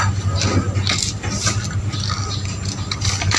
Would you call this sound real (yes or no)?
yes